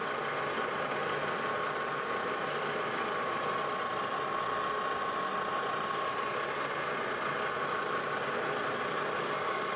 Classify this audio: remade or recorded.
recorded